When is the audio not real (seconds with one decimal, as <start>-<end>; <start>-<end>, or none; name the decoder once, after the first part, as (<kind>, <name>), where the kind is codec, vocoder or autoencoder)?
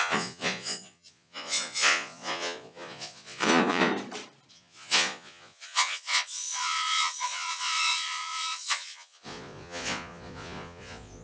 0.0-3.9 (vocoder, Vocos); 4.5-11.2